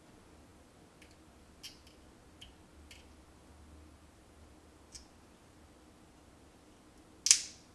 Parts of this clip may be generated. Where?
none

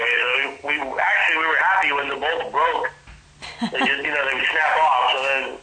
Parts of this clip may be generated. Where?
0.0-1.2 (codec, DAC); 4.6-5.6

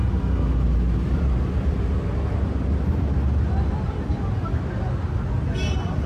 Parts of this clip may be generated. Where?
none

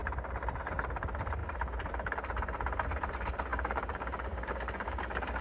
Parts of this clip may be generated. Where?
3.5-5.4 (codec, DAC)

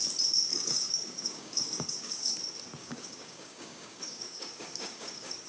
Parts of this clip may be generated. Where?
0.5-2.3 (codec, DAC); 2.8-5.5